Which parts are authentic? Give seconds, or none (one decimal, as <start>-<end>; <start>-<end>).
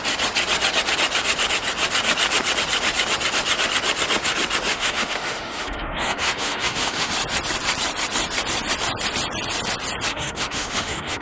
0.0-4.7; 7.1-10.1